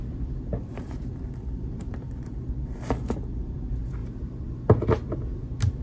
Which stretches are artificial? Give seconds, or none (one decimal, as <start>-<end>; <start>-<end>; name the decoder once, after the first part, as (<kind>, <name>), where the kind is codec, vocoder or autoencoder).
0.7-2.5 (vocoder, BigVGAN v2); 4.0-4.5

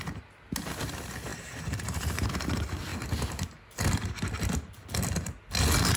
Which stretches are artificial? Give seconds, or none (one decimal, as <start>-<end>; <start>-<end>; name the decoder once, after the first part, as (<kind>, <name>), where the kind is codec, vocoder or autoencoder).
1.3-2.3 (vocoder, BigVGAN v2)

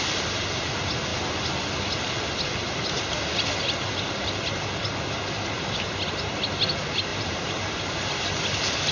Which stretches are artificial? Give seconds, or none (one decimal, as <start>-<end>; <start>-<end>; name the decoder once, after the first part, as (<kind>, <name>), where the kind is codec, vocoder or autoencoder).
7.1-7.8 (vocoder, BigVGAN v2)

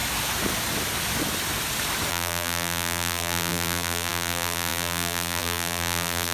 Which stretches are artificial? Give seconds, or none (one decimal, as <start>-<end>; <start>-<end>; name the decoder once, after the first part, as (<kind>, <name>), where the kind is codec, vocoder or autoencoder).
2.1-6.3 (vocoder, BigVGAN v2)

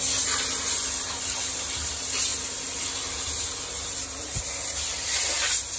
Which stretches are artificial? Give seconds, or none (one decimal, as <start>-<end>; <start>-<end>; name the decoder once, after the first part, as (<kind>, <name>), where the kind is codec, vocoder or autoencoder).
none